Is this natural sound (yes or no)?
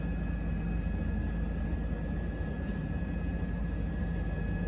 yes